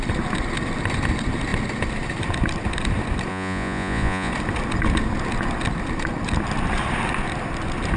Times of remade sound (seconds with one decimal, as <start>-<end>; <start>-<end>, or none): 3.3-4.3